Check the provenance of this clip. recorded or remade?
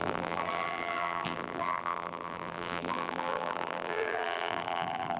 remade